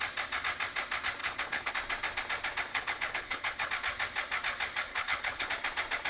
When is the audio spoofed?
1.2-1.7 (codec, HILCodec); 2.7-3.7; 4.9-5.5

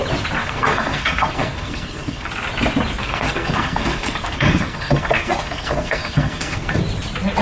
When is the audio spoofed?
0.4-2.3 (codec, SNAC); 3.0-6.8

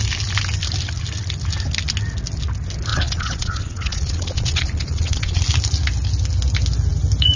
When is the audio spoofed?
2.9-5.4 (vocoder, Vocos)

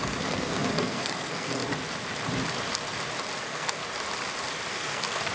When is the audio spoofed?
0.0-1.6 (codec, SNAC); 3.4-3.8; 4.7-5.3